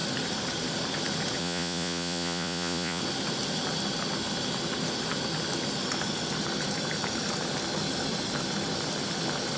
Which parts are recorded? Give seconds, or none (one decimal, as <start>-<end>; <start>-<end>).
0.0-1.4; 3.0-9.6